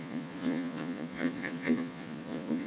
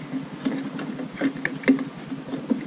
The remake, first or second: first